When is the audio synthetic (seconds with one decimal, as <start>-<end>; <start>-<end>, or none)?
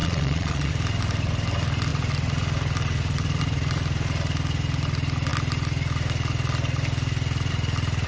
0.0-0.7